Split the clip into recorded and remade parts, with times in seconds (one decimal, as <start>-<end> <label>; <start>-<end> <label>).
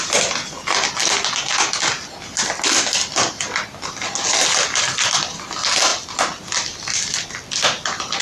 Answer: 0.0-8.2 recorded